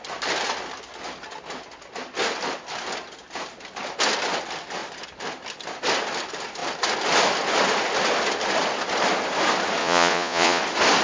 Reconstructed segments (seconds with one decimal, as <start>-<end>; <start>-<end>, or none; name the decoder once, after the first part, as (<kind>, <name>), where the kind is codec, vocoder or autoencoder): 9.8-10.6 (vocoder, Vocos)